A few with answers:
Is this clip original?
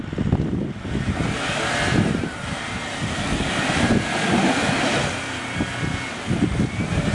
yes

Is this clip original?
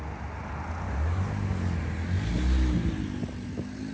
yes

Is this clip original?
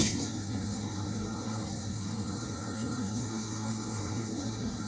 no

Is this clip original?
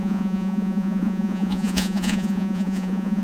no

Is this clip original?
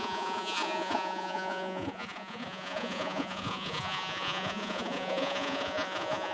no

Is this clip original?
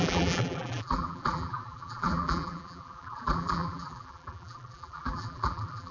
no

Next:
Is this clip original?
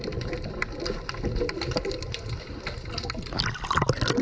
yes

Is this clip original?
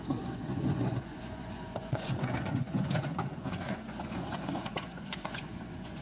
no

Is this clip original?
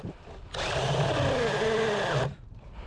yes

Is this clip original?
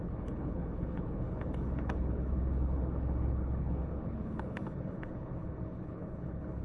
no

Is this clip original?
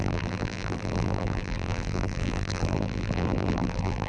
no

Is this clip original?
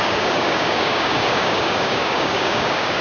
no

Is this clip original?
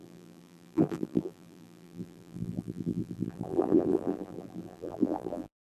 no